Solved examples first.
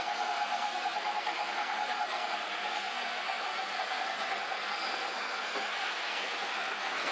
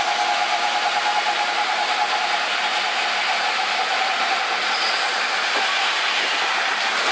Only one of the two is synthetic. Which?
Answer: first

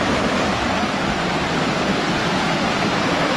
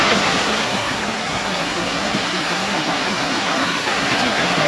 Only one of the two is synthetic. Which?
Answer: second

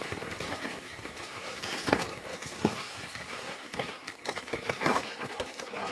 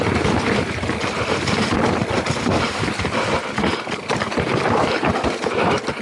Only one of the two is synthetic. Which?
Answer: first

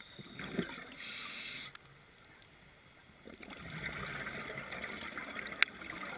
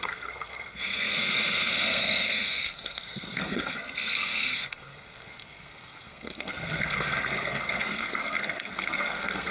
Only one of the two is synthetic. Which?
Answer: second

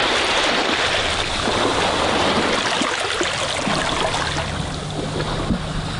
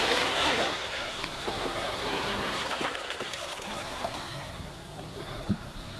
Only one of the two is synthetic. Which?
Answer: second